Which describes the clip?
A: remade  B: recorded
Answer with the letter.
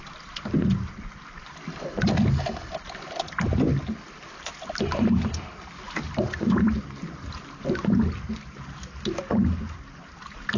B